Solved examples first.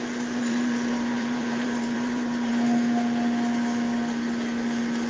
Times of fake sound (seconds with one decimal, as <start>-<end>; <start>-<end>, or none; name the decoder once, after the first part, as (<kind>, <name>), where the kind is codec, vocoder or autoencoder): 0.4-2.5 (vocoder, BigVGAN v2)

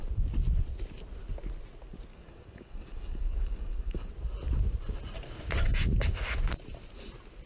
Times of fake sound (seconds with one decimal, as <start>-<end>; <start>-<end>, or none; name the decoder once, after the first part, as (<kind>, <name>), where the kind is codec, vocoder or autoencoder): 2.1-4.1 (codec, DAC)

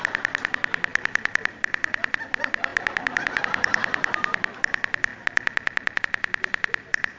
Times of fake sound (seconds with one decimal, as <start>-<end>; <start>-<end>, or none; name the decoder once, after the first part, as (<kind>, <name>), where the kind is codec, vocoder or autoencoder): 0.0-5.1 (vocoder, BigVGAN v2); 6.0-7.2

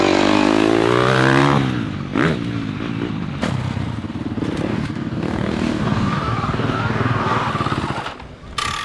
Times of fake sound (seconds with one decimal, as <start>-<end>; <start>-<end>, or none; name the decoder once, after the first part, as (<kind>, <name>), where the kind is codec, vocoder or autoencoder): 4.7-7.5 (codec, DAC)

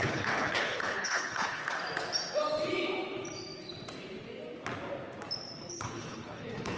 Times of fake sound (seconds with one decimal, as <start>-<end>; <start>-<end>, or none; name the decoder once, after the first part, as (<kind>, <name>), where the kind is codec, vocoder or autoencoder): 0.0-1.6 (codec, HILCodec); 5.7-6.8

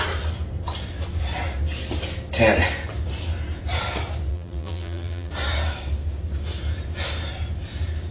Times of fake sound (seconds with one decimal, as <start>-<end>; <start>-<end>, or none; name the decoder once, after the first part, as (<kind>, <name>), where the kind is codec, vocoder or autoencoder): 4.3-5.3 (vocoder, BigVGAN v2)